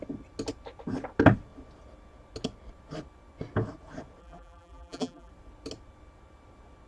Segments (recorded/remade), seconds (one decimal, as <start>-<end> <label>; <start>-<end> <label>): 0.0-4.2 recorded; 4.2-5.3 remade; 5.3-6.9 recorded